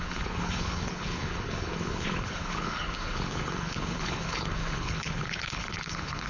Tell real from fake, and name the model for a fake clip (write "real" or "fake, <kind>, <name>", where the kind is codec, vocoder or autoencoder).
fake, codec, HILCodec